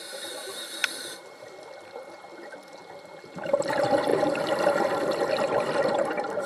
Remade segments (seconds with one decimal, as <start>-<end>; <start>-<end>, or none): 0.0-6.5